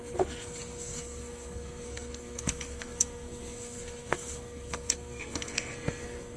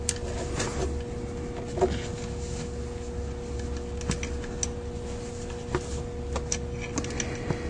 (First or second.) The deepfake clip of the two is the first